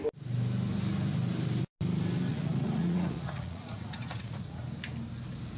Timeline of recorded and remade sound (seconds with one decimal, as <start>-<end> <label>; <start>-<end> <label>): 0.0-2.3 recorded; 2.3-4.6 remade; 4.6-5.6 recorded